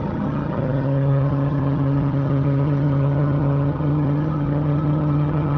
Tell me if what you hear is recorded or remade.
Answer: remade